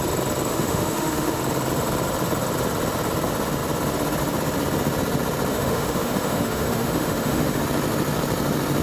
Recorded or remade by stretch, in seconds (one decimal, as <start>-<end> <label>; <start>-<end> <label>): 0.0-0.5 recorded; 0.5-1.4 remade; 1.4-5.5 recorded; 5.5-7.6 remade; 7.6-8.8 recorded